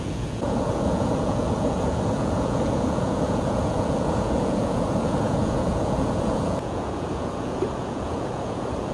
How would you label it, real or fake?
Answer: fake